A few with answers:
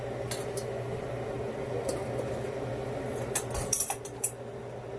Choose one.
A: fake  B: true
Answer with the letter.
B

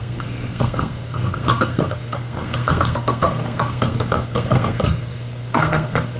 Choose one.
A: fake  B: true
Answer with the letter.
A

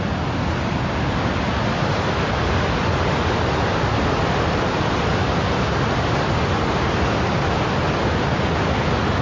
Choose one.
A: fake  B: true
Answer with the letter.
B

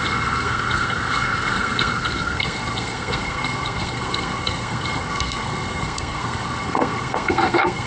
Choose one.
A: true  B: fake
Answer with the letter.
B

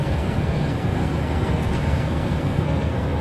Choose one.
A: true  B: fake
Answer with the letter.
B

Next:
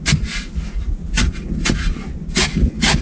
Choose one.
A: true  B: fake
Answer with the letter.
A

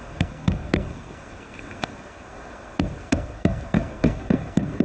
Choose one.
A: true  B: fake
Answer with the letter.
B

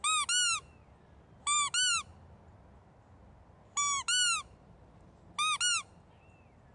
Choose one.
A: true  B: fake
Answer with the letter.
A